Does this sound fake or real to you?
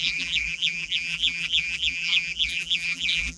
fake